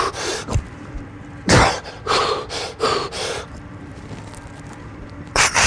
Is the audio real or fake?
fake